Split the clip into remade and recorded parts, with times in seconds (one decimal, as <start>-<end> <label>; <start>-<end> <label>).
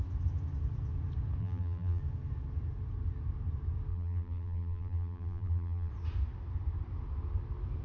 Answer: 0.0-1.4 recorded; 1.4-2.0 remade; 2.0-3.9 recorded; 3.9-5.9 remade; 5.9-7.8 recorded